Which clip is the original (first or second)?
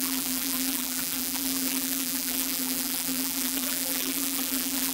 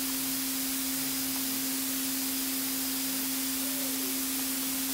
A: second